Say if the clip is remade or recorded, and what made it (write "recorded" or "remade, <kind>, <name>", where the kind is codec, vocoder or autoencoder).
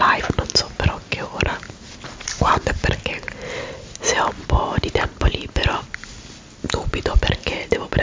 recorded